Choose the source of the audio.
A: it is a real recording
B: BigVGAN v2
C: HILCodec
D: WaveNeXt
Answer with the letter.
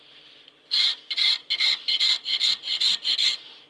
B